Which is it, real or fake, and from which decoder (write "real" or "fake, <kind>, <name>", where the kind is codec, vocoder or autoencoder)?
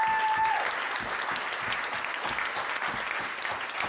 real